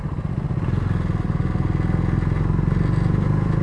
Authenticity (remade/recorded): recorded